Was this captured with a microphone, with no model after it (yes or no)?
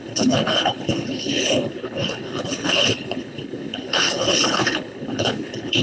no